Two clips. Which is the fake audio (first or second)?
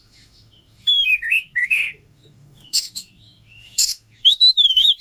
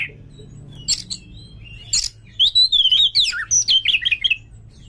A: first